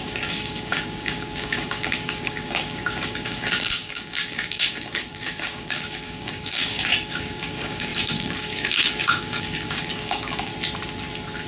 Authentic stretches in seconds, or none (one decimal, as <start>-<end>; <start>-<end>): 10.5-11.5